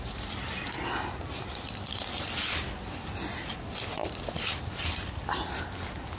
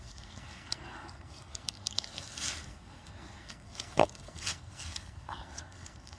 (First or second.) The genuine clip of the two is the first